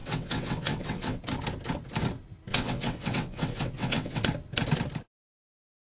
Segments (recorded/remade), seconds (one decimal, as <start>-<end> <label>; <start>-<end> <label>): 0.0-1.2 remade; 1.2-2.5 recorded; 2.5-4.2 remade; 4.2-6.0 recorded